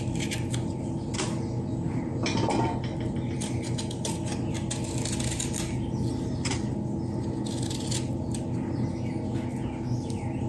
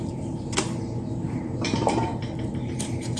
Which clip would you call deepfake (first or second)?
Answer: second